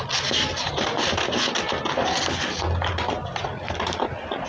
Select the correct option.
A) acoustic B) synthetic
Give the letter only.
A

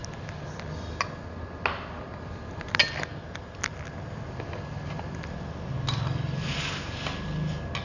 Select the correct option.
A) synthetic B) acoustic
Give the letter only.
B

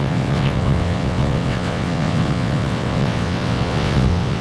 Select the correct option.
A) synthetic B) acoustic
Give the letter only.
A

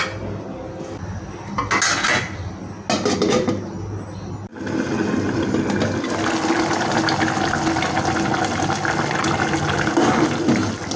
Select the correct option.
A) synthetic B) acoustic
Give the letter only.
B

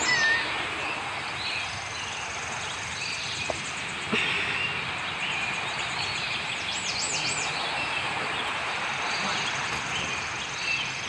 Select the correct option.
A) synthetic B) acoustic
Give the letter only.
B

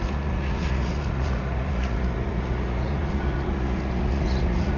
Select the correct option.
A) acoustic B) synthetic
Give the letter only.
B